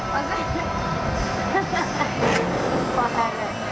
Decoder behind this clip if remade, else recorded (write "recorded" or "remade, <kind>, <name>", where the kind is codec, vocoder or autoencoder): recorded